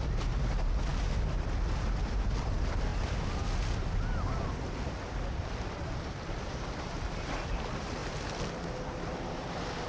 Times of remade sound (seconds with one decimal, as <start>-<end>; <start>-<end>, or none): none